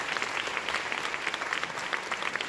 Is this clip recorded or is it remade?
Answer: recorded